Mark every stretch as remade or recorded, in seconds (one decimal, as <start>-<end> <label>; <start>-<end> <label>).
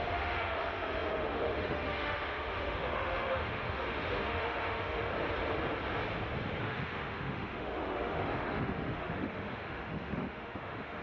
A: 0.0-5.1 remade; 5.1-6.6 recorded; 6.6-11.0 remade